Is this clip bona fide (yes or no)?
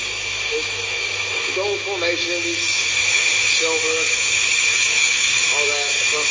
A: no